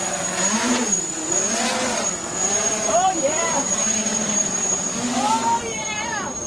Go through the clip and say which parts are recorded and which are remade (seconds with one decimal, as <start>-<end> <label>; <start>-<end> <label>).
0.0-1.3 remade; 1.3-2.4 recorded; 2.4-6.5 remade